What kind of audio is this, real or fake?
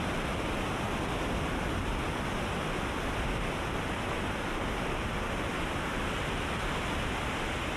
real